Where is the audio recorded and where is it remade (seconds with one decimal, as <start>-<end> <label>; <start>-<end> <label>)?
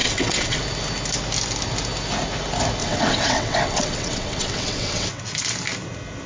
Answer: 0.0-0.6 remade; 0.6-2.8 recorded; 2.8-5.2 remade; 5.2-6.3 recorded